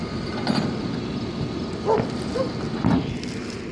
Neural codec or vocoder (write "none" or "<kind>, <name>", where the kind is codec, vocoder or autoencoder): none